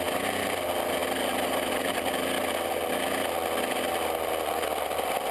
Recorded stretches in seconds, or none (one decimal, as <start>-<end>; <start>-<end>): 0.0-5.3